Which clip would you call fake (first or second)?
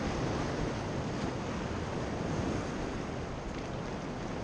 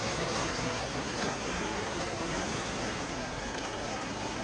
second